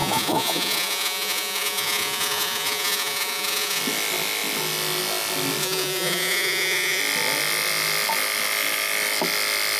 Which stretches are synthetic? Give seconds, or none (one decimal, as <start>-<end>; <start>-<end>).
0.0-3.8; 5.6-7.0